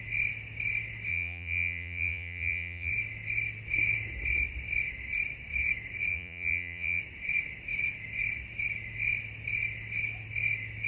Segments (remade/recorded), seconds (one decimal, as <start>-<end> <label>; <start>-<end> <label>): 0.0-1.1 recorded; 1.1-2.9 remade; 2.9-6.1 recorded; 6.1-7.0 remade; 7.0-10.9 recorded